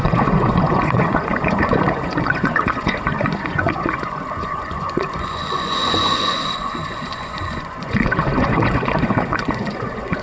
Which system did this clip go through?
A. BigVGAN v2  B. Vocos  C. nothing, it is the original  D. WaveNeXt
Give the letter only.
B